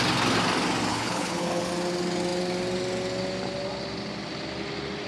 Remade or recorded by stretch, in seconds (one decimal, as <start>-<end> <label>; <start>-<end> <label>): 0.0-0.9 recorded; 0.9-1.7 remade; 1.7-5.1 recorded